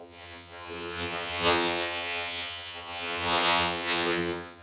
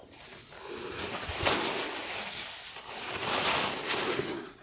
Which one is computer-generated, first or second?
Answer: first